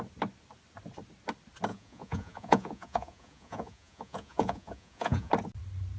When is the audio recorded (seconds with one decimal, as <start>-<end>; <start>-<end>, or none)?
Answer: 0.0-1.7; 5.3-6.0